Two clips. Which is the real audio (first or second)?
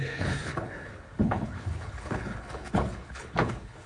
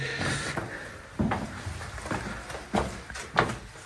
second